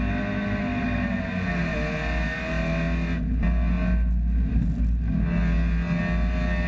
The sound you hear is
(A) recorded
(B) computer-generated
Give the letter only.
A